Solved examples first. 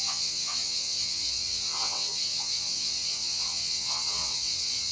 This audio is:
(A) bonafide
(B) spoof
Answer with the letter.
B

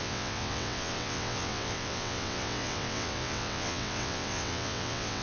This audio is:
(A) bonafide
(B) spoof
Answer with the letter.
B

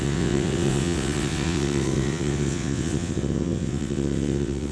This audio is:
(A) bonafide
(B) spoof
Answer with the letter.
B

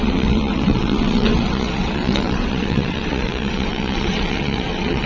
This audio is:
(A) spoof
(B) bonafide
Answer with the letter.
A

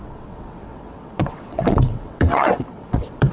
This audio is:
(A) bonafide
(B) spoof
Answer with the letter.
B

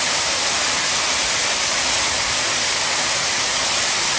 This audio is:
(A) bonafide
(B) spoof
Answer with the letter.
A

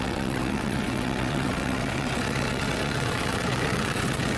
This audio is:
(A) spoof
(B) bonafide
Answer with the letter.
A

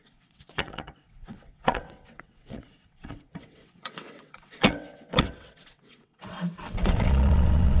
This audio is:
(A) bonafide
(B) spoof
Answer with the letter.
B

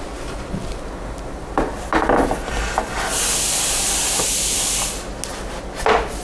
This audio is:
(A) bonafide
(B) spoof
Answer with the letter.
A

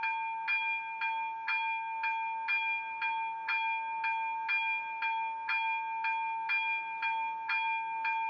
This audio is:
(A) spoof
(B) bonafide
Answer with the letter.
B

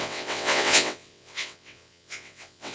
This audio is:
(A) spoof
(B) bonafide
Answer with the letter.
A